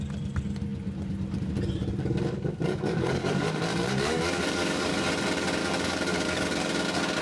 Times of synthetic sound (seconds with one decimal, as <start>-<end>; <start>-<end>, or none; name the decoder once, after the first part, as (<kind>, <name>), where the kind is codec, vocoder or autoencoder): 2.0-4.9 (codec, DAC); 5.6-6.7